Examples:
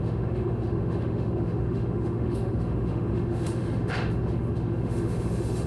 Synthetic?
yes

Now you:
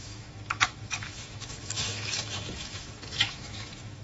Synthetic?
yes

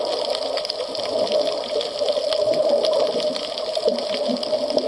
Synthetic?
no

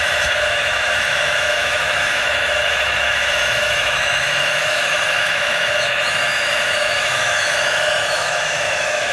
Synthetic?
yes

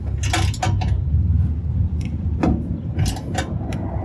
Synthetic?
no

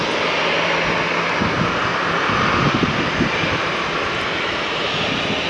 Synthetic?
no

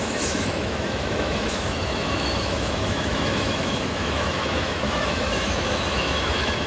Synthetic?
yes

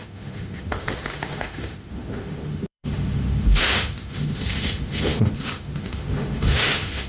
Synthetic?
yes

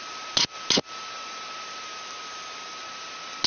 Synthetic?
no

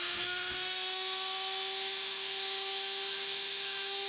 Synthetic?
yes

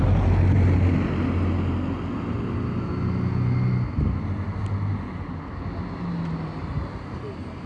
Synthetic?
no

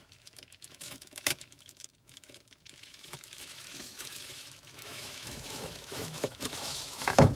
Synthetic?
yes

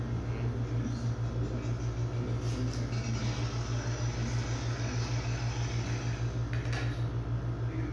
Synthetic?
no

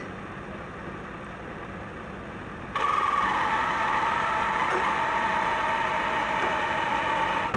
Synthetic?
no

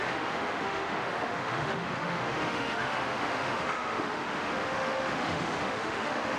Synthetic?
yes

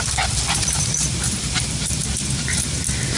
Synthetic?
no